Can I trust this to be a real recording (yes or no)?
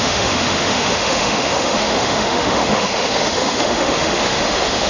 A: no